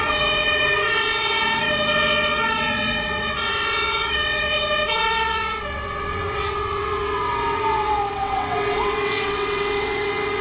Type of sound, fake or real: fake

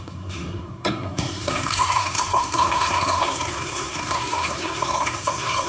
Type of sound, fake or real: fake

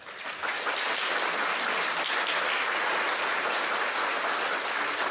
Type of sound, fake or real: real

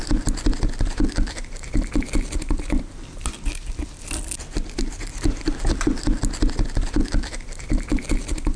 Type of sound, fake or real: real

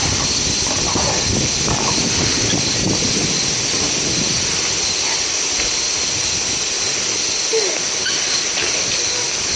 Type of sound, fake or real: real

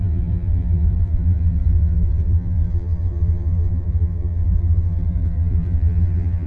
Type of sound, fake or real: fake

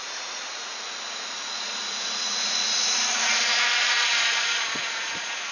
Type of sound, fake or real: fake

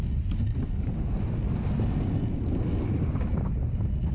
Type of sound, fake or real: real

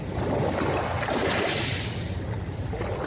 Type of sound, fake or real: real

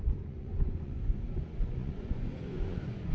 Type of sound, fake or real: fake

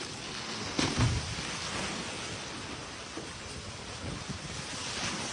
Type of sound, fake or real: real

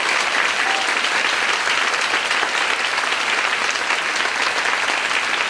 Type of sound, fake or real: real